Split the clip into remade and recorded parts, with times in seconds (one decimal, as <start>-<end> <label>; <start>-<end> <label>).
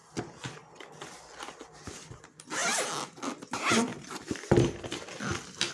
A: 0.0-2.2 remade; 2.2-3.9 recorded; 3.9-5.7 remade